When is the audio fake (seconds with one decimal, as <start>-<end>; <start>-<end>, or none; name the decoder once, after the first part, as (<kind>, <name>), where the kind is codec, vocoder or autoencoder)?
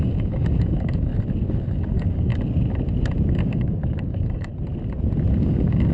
0.0-1.1 (codec, DAC); 1.7-2.3; 3.3-4.5; 5.4-5.9